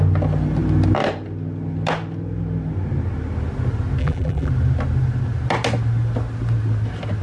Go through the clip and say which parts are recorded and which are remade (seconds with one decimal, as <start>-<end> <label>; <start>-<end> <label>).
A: 0.0-4.0 recorded; 4.0-4.5 remade; 4.5-7.2 recorded